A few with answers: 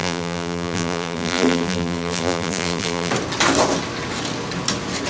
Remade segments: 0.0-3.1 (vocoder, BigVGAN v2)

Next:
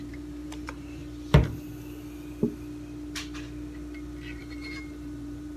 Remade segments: 0.0-1.0 (vocoder, BigVGAN v2); 4.4-5.6

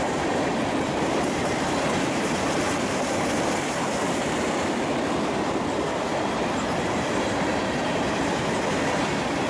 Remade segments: 0.0-9.5 (vocoder, BigVGAN v2)

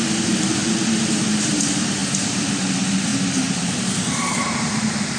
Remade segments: 0.0-0.6 (vocoder, BigVGAN v2); 1.3-5.2

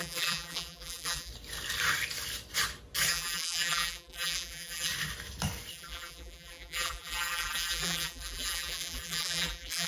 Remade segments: 0.0-1.3 (vocoder, BigVGAN v2); 3.1-4.9; 5.7-9.9

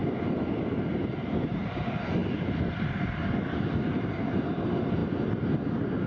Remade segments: none

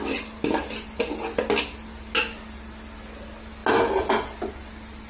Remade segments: none